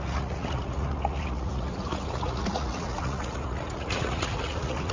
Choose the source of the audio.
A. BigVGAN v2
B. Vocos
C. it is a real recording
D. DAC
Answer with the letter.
B